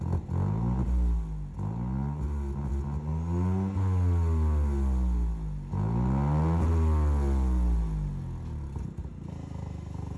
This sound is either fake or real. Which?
real